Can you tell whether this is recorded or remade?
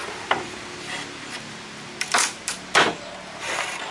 recorded